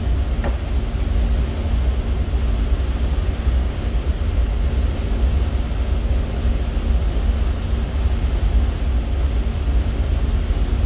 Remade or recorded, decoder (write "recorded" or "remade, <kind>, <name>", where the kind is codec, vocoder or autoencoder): recorded